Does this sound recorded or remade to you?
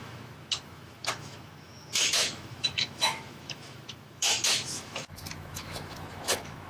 remade